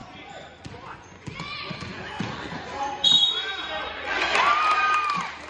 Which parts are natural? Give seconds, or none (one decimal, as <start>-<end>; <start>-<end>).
3.3-3.8; 4.3-5.5